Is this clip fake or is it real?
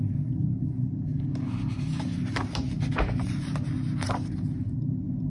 fake